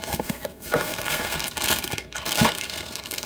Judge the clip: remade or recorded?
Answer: remade